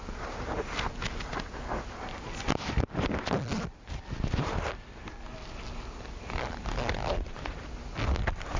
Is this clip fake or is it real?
real